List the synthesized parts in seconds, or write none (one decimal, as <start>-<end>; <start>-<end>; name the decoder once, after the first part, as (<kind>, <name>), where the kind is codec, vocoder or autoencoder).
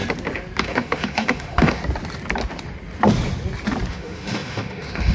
0.6-1.8 (autoencoder, DAC-VAE); 3.9-5.1